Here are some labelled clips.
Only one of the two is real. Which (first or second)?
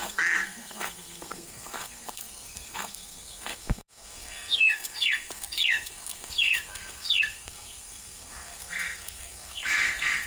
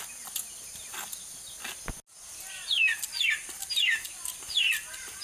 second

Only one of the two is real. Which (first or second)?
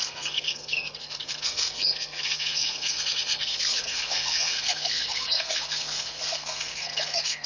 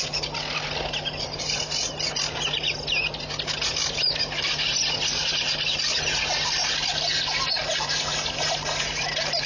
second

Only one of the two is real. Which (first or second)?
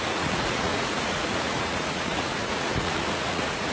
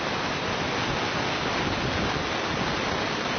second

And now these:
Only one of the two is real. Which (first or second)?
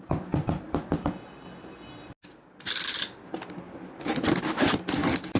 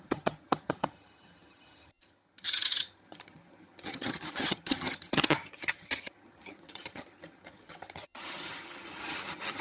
first